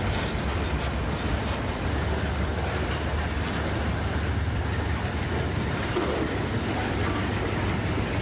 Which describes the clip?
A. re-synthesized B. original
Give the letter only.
B